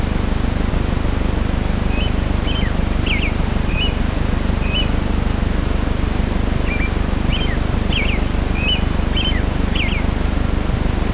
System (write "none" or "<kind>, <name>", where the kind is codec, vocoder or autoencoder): none